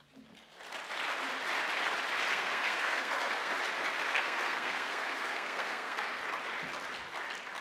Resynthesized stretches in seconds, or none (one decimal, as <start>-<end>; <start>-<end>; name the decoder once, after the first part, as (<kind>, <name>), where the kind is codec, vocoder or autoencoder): 2.3-3.5 (codec, SNAC); 4.1-6.2